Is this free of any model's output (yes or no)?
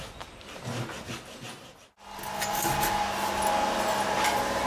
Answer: yes